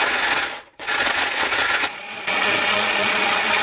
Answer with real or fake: fake